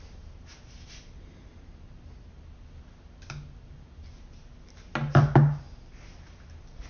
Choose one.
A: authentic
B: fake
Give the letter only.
A